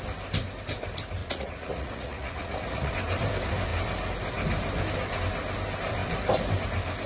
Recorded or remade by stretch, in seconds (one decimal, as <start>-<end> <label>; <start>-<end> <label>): 0.0-1.2 recorded; 1.2-2.9 remade; 2.9-7.1 recorded